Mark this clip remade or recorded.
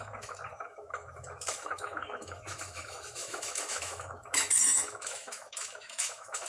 remade